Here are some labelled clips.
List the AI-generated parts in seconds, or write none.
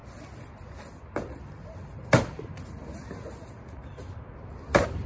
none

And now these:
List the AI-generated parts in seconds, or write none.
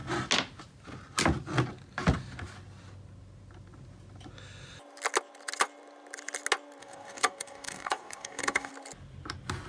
6.8-8.7 (codec, DAC)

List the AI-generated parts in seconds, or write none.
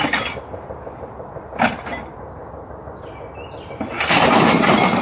none